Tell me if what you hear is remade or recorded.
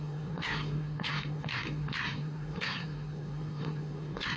remade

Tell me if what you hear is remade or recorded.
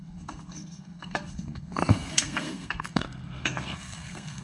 remade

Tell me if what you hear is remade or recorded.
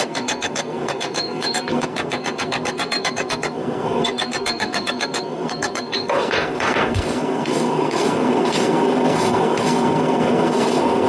remade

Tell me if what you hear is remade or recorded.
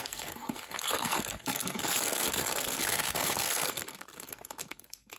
remade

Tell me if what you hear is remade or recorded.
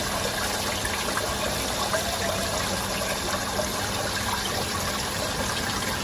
recorded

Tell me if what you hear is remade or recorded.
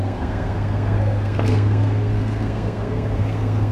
remade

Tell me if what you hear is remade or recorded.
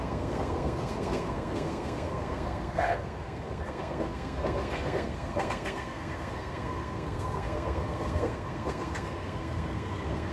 remade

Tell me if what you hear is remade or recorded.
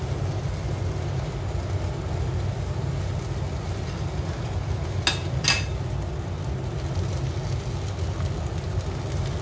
recorded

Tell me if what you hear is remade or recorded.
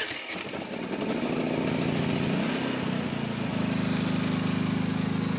recorded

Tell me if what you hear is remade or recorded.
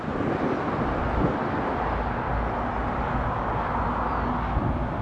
recorded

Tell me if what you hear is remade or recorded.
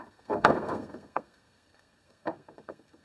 remade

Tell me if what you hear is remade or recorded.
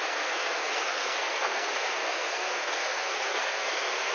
remade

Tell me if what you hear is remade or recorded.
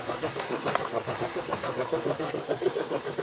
remade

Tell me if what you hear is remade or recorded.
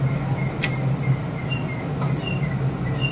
recorded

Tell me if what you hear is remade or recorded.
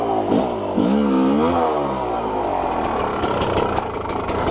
recorded